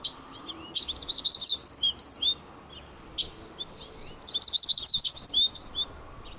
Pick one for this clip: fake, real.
real